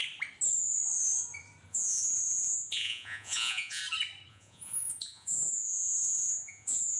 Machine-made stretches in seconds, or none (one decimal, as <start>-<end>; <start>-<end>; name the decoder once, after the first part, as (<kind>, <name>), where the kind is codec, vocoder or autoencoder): 1.7-3.8 (vocoder, Vocos); 4.3-7.0